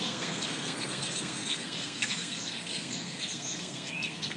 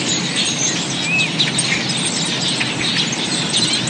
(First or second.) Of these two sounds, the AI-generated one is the first